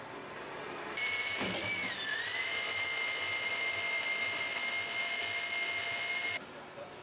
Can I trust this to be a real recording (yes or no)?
yes